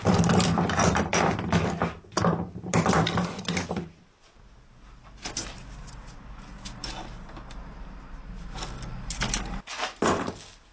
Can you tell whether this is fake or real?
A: real